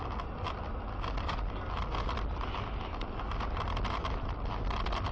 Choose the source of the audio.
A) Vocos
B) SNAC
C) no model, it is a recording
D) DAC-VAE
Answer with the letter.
C